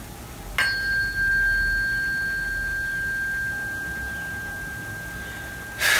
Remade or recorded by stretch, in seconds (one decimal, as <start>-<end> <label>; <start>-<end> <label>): 0.0-6.0 recorded